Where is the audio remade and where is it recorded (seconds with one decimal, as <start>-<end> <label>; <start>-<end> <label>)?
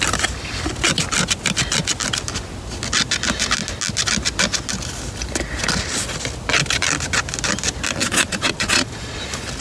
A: 0.0-8.0 recorded; 8.0-9.2 remade; 9.2-9.6 recorded